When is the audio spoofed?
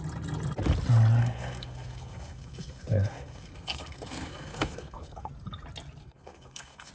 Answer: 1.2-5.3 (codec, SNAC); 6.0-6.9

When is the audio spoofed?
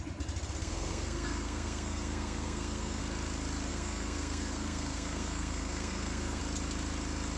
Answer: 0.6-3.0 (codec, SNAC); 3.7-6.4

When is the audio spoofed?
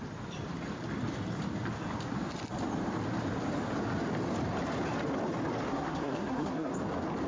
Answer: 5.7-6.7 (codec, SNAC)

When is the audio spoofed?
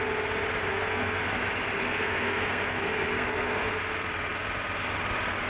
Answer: 0.7-1.2 (codec, SNAC); 1.8-3.8